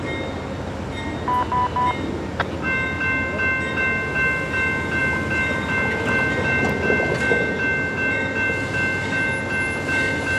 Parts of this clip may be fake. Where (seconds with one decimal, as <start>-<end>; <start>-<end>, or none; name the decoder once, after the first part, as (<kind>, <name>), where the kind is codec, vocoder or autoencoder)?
none